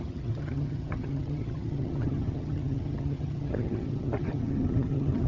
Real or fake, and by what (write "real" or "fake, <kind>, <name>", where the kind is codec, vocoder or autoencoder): fake, vocoder, HiFi-GAN